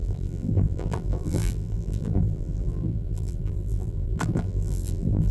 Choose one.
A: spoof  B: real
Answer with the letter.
A